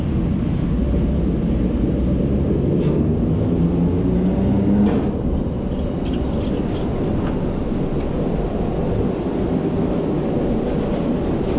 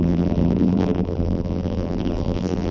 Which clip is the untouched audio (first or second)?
first